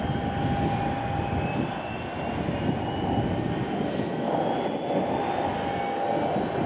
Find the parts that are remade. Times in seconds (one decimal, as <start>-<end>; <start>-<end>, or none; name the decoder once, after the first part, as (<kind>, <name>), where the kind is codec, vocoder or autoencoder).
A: none